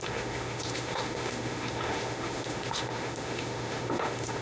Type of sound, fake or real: fake